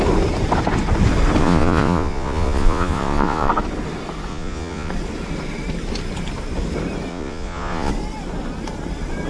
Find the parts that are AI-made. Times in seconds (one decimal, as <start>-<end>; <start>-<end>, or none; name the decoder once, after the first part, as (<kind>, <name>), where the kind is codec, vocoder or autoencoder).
1.4-3.5 (vocoder, Vocos); 4.3-4.9; 7.1-7.9